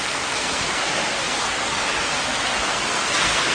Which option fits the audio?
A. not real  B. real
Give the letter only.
A